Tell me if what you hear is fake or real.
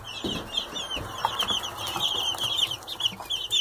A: real